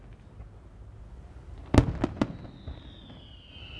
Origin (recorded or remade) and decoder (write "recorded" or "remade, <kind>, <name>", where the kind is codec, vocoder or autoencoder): recorded